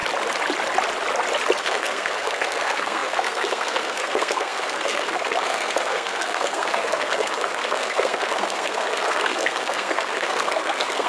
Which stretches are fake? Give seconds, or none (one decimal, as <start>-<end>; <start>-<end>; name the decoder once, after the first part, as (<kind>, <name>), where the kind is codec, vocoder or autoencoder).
1.6-11.1 (codec, SNAC)